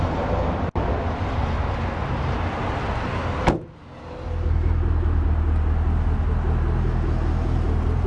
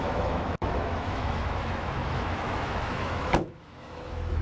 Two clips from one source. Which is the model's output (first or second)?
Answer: second